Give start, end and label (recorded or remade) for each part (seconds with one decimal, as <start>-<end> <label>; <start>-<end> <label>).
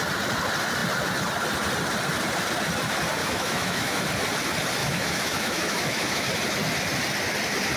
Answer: 0.0-3.2 recorded; 3.2-4.0 remade; 4.0-4.8 recorded; 4.8-6.3 remade; 6.3-7.8 recorded